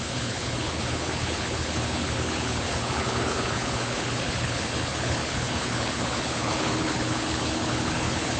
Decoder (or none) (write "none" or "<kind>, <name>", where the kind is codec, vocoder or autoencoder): codec, HILCodec